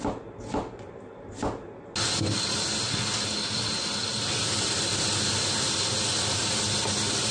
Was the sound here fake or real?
real